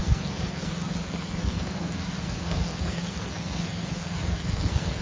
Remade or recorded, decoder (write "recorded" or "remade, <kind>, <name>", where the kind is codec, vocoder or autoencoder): remade, codec, SNAC